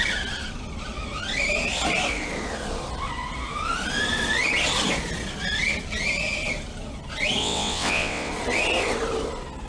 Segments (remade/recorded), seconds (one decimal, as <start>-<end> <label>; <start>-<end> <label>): 0.0-7.4 recorded; 7.4-8.3 remade; 8.3-9.7 recorded